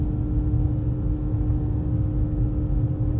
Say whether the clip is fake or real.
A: real